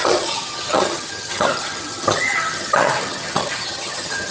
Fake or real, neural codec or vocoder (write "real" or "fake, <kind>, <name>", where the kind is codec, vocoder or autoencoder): fake, vocoder, HiFi-GAN